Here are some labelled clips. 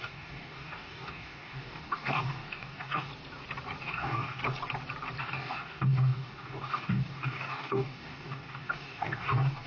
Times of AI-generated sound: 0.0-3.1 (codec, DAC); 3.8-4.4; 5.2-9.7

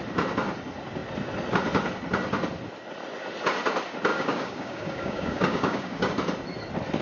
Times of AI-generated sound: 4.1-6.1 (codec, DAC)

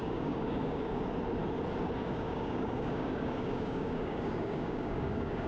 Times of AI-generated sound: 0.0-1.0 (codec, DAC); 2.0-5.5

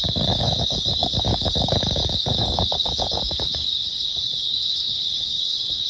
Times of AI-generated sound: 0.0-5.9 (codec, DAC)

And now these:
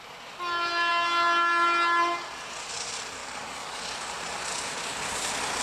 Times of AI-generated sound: 3.2-3.8 (codec, DAC)

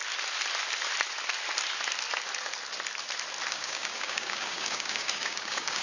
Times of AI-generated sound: 3.5-5.8 (codec, DAC)

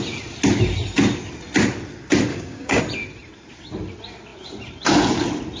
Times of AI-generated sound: 2.3-2.8 (codec, DAC)